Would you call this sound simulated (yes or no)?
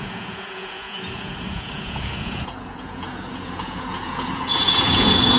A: yes